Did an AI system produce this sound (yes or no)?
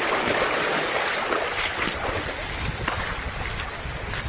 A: no